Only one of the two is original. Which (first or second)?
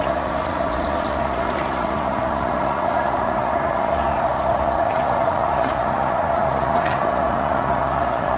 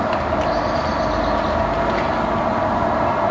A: second